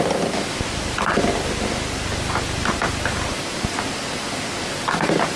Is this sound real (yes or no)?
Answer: yes